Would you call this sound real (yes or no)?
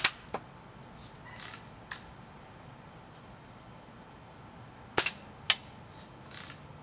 yes